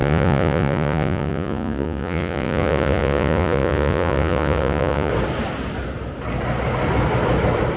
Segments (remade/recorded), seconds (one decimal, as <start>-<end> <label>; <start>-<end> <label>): 0.0-5.1 remade; 5.1-7.8 recorded